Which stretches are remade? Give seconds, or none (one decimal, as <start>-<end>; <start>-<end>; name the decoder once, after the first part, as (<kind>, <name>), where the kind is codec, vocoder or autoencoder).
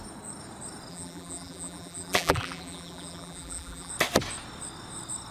0.9-3.9 (vocoder, BigVGAN v2)